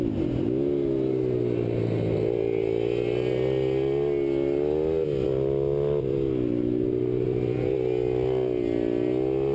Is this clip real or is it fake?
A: real